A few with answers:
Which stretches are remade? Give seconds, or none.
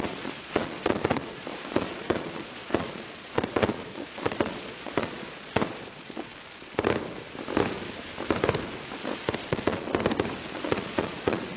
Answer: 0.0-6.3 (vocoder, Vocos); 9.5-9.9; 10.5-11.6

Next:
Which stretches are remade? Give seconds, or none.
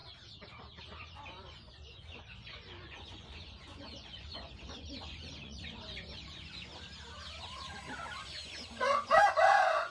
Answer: 0.9-6.7 (vocoder, Vocos); 8.2-9.9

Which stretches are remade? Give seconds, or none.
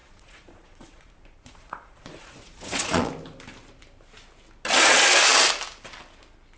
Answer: 0.0-3.1 (vocoder, Vocos)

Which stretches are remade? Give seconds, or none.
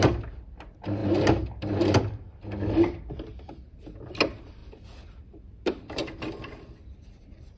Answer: none